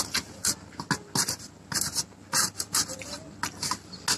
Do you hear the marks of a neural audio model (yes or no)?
no